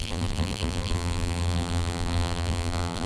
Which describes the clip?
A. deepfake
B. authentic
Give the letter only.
A